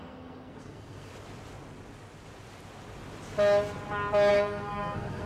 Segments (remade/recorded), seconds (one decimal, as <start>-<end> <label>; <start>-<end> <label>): 0.0-1.1 remade; 1.1-4.3 recorded; 4.3-5.3 remade